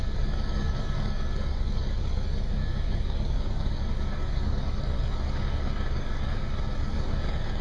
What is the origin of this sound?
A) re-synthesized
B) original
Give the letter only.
A